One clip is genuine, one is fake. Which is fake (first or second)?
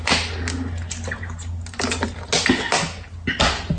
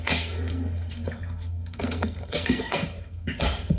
second